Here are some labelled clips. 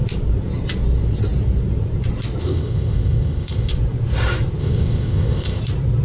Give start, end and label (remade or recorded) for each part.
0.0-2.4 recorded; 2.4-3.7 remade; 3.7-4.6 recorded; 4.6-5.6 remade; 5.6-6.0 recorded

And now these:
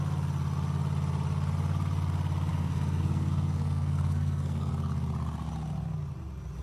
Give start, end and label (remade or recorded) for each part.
0.0-2.5 recorded; 2.5-4.7 remade; 4.7-6.6 recorded

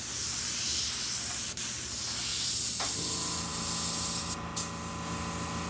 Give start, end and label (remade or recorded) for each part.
0.0-2.3 recorded; 2.3-3.0 remade; 3.0-5.7 recorded

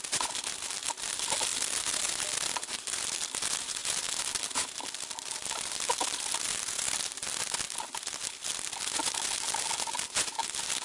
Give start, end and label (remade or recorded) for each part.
0.0-10.8 recorded

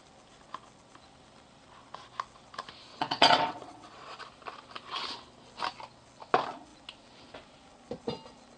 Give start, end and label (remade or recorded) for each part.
0.0-2.9 recorded; 2.9-4.2 remade; 4.2-8.6 recorded

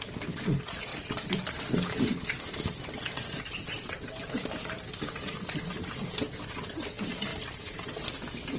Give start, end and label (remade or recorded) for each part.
0.0-0.9 recorded; 0.9-5.6 remade; 5.6-8.6 recorded

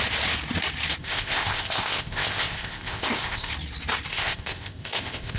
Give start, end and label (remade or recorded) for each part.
0.0-1.0 recorded; 1.0-3.5 remade; 3.5-4.1 recorded; 4.1-5.4 remade

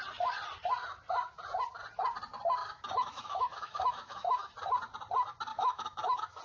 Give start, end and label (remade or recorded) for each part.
0.0-2.6 recorded; 2.6-4.5 remade; 4.5-5.5 recorded; 5.5-6.4 remade